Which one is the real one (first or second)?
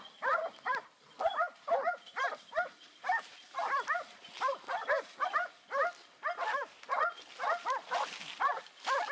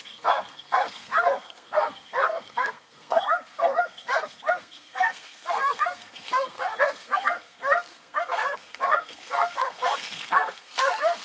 first